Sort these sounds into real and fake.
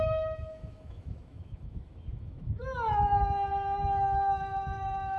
fake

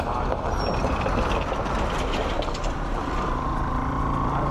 real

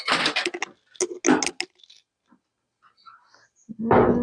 real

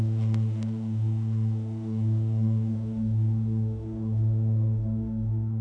fake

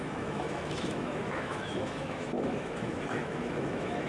fake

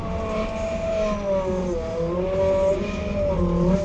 real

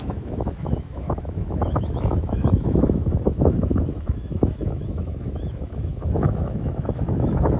fake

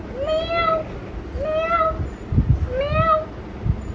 real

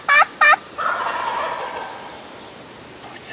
real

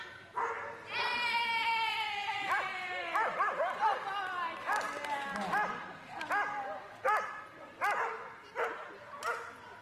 real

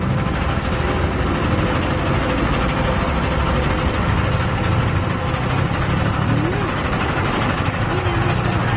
real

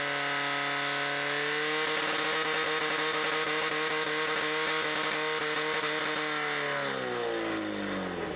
real